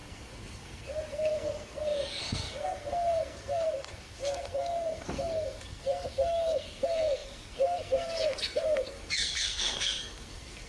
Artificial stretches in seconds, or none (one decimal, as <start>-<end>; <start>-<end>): 0.0-10.7

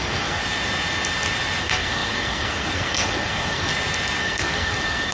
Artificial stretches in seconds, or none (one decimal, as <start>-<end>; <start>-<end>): 0.0-0.4; 1.6-3.7; 4.2-5.1

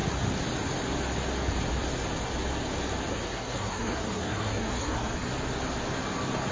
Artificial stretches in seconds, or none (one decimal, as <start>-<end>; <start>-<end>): 3.1-5.3